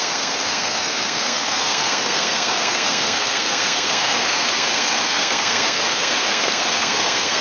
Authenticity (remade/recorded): remade